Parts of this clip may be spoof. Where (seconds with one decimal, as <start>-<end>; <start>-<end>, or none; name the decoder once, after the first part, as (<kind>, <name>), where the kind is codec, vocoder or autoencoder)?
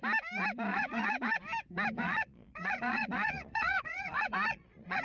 0.7-1.4 (vocoder, Vocos); 2.0-5.0